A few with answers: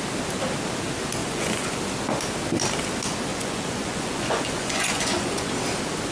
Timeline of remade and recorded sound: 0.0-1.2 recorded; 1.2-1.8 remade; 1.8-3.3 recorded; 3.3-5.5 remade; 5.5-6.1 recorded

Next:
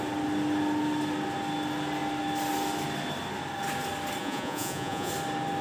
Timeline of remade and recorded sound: 0.0-4.2 recorded; 4.2-5.1 remade; 5.1-5.6 recorded

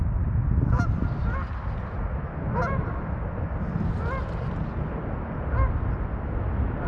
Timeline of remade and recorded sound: 0.0-6.9 recorded

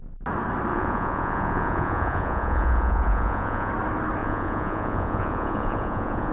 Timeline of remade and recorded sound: 0.0-0.7 recorded; 0.7-3.7 remade; 3.7-4.2 recorded; 4.2-6.3 remade

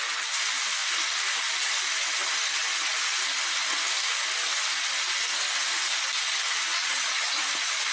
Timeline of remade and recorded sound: 0.0-6.7 recorded; 6.7-7.4 remade; 7.4-7.9 recorded

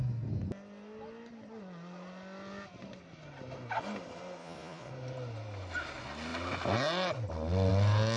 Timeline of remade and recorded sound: 0.0-4.4 recorded; 4.4-4.9 remade; 4.9-8.2 recorded

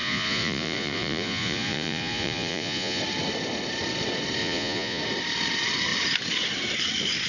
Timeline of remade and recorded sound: 0.0-3.0 remade; 3.0-4.4 recorded; 4.4-5.0 remade; 5.0-7.3 recorded

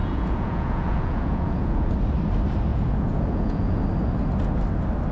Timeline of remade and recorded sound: 0.0-1.9 remade; 1.9-2.7 recorded; 2.7-3.8 remade; 3.8-5.1 recorded